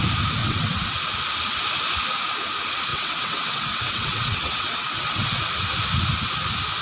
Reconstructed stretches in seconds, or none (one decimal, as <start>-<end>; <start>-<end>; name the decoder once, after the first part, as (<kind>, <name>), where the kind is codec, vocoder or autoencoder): 0.4-0.9 (vocoder, WaveNeXt); 2.9-5.4